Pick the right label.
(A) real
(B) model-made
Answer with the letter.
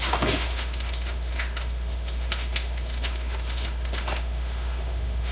B